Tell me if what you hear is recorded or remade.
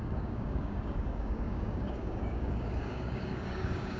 remade